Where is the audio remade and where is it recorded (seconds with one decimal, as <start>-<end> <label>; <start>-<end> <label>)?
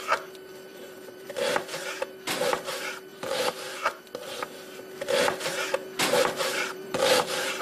0.0-0.7 recorded; 0.7-1.3 remade; 1.3-3.1 recorded; 3.1-4.0 remade; 4.0-6.5 recorded; 6.5-7.6 remade